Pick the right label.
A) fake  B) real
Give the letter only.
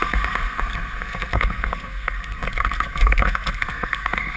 A